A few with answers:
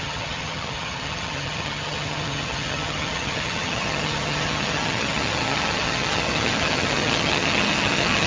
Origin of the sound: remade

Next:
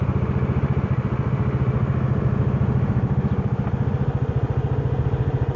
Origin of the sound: recorded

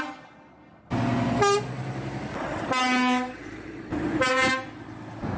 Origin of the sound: recorded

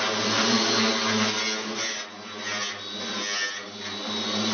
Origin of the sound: recorded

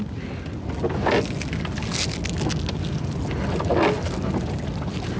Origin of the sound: recorded